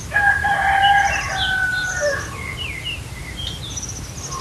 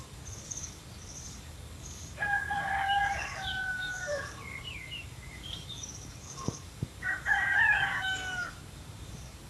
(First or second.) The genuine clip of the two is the first